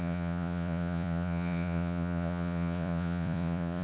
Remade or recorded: remade